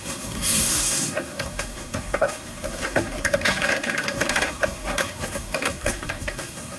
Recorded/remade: remade